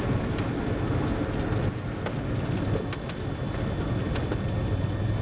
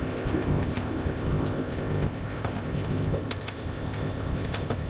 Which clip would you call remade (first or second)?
second